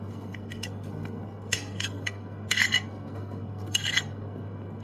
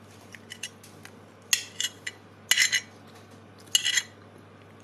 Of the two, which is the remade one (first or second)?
first